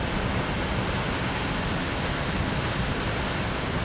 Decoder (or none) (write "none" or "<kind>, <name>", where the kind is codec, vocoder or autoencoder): none